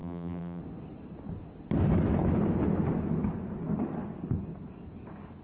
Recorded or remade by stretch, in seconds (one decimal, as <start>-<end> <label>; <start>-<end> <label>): 0.0-0.6 remade; 0.6-5.4 recorded